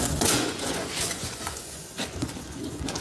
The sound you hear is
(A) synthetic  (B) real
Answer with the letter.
A